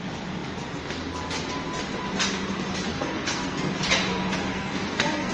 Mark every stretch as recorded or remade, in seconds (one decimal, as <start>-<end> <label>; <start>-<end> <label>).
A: 0.0-2.9 recorded; 2.9-3.7 remade; 3.7-4.5 recorded; 4.5-5.3 remade